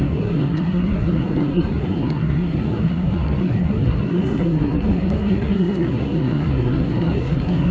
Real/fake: fake